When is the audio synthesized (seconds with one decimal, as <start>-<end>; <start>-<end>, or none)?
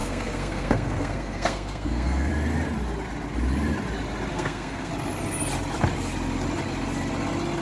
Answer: 0.0-2.3; 4.3-4.9